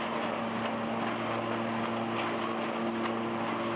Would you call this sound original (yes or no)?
yes